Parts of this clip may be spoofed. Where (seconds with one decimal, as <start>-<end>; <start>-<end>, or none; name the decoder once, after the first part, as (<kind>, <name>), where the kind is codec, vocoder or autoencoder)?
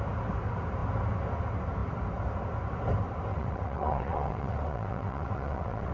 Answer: 3.3-5.9 (vocoder, WaveNeXt)